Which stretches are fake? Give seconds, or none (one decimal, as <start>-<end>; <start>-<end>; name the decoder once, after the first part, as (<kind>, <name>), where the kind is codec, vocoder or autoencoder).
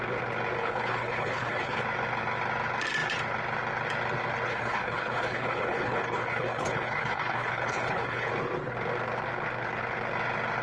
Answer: 0.6-1.8 (codec, HILCodec); 4.5-8.3